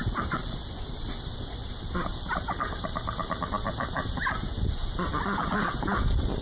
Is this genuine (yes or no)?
no